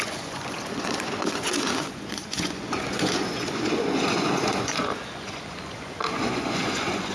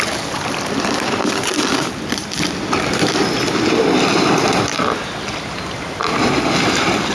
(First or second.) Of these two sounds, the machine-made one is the first